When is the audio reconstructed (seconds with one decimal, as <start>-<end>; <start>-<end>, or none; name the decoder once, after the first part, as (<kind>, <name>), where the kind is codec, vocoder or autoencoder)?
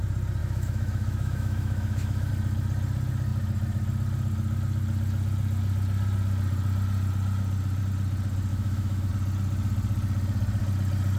0.4-2.3 (autoencoder, DAC-VAE); 8.5-9.1